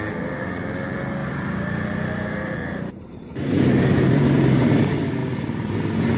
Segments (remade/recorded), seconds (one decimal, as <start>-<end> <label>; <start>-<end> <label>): 0.0-1.2 recorded; 1.2-4.8 remade; 4.8-6.2 recorded